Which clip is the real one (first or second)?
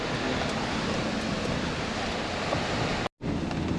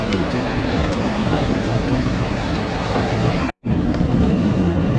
first